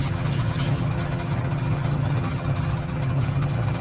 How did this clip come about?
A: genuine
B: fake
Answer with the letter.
B